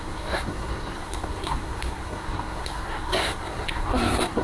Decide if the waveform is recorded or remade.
remade